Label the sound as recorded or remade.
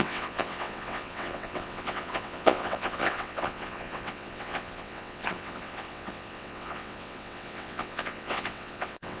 remade